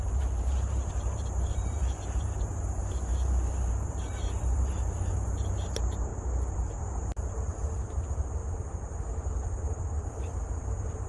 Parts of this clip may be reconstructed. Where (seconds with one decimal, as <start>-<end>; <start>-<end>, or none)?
0.0-2.8; 3.7-6.1; 6.8-8.4; 9.0-11.1